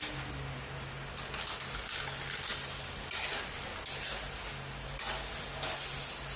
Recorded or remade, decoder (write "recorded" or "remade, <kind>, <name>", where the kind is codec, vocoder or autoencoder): recorded